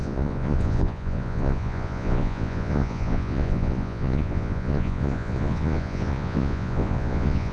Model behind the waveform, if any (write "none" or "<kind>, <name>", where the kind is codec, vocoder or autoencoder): vocoder, Vocos